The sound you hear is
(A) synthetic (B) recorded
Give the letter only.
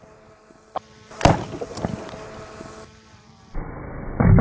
B